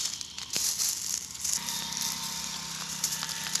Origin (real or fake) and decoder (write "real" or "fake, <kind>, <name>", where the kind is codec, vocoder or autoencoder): real